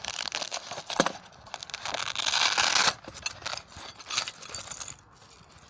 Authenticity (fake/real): real